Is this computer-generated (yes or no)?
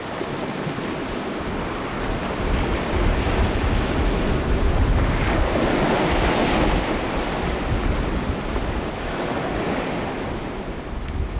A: no